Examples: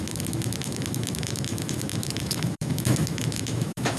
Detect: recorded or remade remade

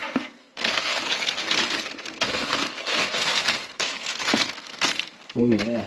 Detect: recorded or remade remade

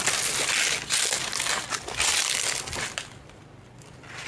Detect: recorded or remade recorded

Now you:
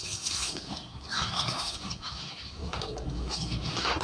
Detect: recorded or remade remade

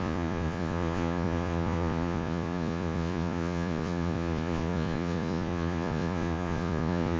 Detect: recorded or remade remade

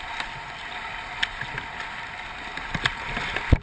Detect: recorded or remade recorded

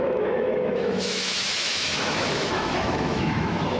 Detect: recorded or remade remade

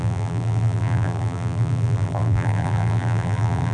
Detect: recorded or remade remade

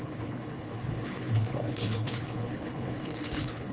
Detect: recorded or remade remade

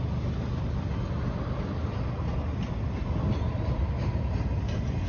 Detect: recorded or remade recorded